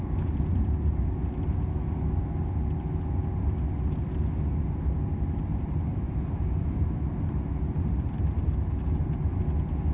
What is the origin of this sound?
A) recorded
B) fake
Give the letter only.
A